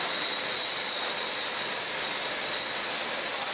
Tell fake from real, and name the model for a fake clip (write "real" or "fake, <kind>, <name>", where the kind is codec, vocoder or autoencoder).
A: real